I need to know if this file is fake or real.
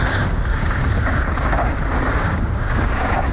fake